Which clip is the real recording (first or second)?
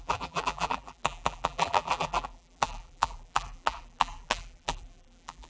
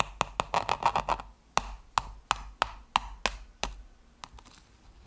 second